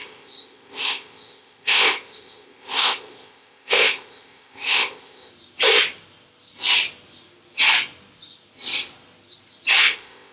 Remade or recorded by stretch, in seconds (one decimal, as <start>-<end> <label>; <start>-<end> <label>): 0.0-5.3 remade; 5.3-9.8 recorded; 9.8-10.3 remade